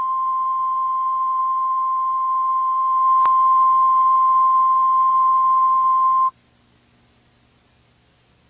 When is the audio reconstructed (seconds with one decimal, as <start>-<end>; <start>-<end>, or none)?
none